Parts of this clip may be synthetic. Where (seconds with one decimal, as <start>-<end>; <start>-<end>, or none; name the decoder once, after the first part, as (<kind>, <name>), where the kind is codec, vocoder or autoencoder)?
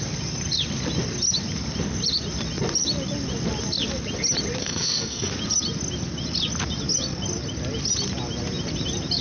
4.6-5.3 (codec, SNAC)